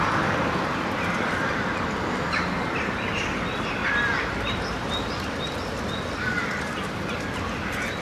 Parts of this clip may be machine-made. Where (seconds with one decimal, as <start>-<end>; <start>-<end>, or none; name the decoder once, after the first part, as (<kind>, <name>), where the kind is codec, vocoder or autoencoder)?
3.8-4.9 (vocoder, BigVGAN v2)